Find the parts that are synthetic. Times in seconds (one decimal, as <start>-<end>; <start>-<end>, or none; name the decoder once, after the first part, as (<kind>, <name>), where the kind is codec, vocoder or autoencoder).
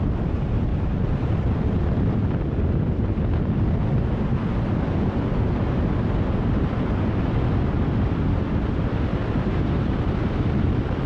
0.7-1.3 (vocoder, BigVGAN v2); 9.1-9.8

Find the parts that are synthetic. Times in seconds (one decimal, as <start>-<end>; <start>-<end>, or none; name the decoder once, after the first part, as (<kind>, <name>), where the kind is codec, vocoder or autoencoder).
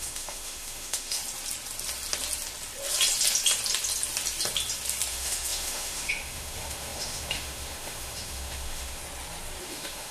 0.0-1.2 (autoencoder, DAC-VAE); 5.1-9.0; 9.6-10.1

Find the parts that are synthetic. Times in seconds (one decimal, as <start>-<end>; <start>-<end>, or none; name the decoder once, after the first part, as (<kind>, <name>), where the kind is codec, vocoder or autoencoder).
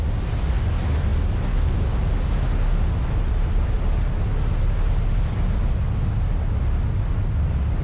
none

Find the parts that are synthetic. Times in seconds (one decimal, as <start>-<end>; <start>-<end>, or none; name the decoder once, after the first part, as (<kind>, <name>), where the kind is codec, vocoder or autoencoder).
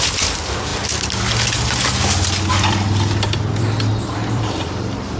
0.0-0.7 (vocoder, BigVGAN v2); 2.5-5.2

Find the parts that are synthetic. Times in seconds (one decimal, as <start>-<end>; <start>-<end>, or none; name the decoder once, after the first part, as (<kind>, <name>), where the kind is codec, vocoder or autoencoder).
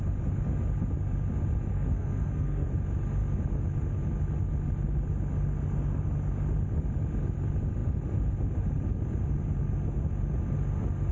1.7-2.7 (codec, SNAC)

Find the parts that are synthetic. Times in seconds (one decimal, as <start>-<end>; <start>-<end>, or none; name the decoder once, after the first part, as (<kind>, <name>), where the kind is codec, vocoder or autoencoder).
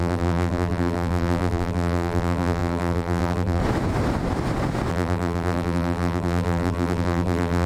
0.0-3.6 (vocoder, BigVGAN v2); 4.9-7.7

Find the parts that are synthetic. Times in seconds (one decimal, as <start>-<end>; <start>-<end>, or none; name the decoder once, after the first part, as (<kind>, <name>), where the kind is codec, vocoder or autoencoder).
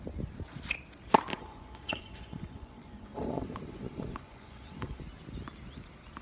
1.3-5.0 (vocoder, Vocos)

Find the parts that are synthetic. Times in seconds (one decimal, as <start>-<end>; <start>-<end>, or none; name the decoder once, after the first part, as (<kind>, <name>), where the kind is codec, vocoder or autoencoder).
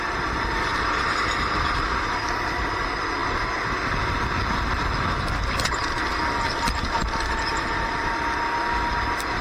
none